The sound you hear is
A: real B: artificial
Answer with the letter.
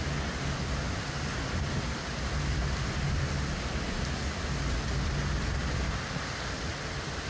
A